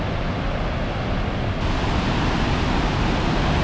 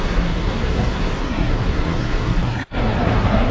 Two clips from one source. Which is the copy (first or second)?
second